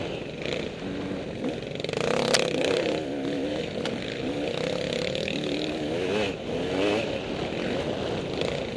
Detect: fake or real real